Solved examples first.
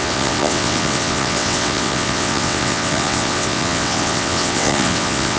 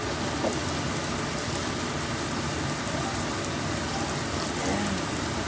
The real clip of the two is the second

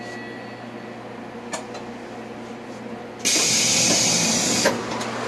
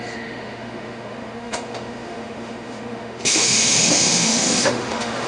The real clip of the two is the first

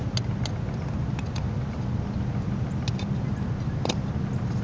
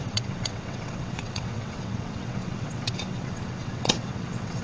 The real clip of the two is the first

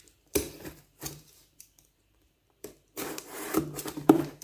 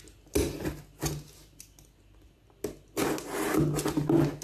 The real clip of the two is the second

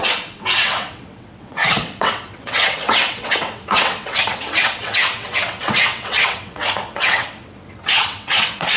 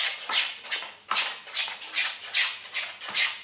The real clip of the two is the second